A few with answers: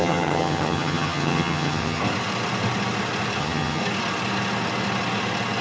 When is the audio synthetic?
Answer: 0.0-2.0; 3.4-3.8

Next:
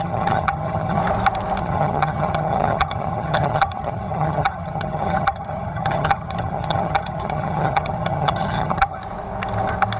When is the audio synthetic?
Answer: 0.0-1.0; 1.6-9.0